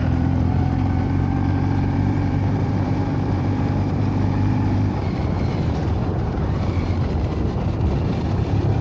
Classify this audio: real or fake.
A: fake